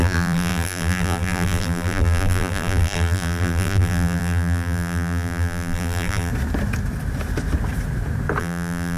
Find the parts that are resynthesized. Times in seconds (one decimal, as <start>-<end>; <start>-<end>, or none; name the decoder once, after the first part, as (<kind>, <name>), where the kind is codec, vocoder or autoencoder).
0.0-6.3 (vocoder, BigVGAN v2); 8.4-9.0